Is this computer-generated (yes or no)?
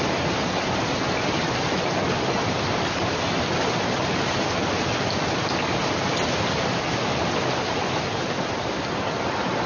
no